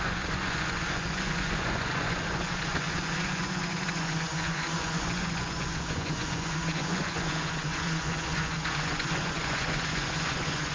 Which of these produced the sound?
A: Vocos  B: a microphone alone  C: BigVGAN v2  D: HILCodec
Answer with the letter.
A